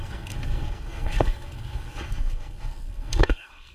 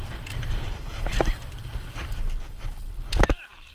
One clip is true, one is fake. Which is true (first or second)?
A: second